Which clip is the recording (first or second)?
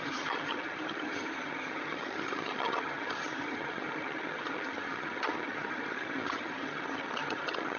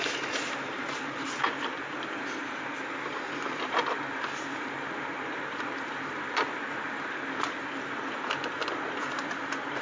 second